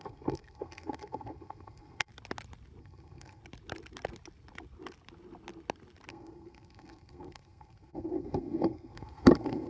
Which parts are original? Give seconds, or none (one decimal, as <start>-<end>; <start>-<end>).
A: 2.1-2.8; 3.4-6.1